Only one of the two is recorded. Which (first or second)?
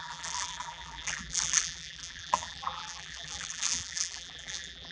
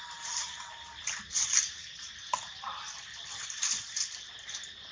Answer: second